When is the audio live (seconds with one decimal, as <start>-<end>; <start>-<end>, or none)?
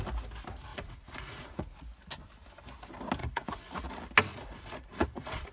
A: 0.0-0.7; 1.8-3.2; 3.9-4.3